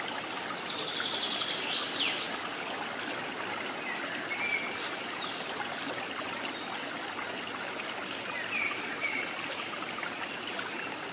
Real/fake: real